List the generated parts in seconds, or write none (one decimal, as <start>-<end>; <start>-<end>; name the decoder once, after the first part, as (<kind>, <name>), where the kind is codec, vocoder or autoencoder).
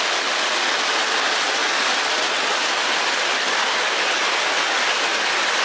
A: none